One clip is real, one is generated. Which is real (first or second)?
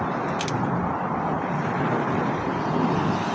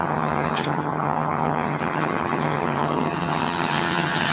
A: first